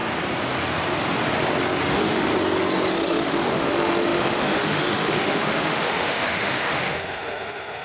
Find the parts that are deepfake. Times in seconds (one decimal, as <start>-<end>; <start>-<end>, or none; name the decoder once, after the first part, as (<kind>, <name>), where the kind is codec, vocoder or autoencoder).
1.9-2.3 (autoencoder, DAC-VAE); 2.9-7.8